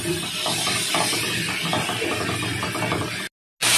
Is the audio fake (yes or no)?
no